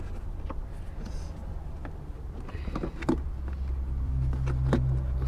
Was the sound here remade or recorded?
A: recorded